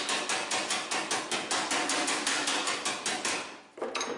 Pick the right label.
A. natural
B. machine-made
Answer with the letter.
A